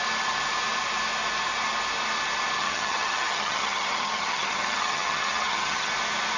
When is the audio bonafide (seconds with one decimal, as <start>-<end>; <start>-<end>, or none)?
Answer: 0.0-2.6; 5.9-6.4